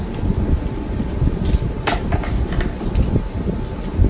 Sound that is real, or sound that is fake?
real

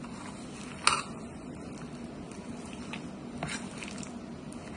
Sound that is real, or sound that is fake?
real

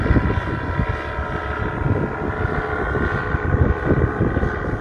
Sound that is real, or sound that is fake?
real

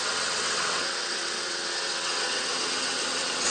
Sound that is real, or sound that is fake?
fake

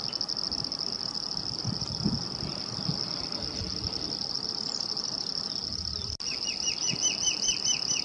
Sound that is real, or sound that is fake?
real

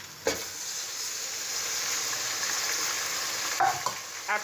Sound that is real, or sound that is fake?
real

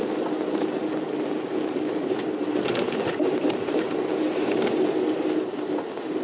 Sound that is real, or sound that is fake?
real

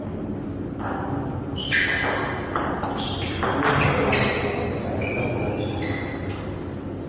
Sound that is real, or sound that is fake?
real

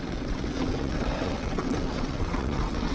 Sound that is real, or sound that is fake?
fake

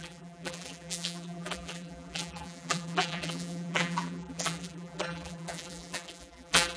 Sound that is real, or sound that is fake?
fake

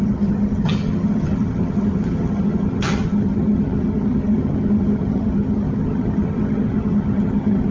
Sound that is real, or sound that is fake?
fake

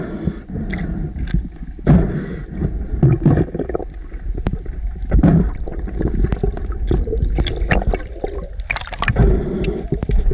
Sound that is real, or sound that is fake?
real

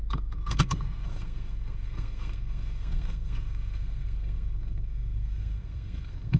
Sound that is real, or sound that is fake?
fake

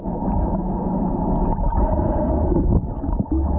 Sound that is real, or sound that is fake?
real